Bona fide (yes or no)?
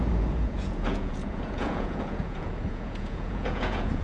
no